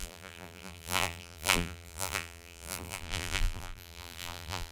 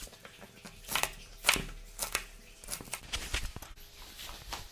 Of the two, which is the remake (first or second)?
first